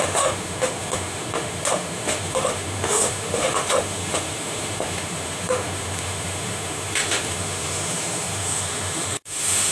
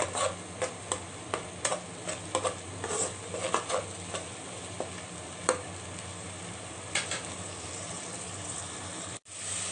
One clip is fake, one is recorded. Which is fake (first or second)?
first